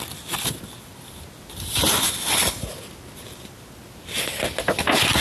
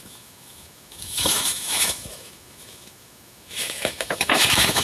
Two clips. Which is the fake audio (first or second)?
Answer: second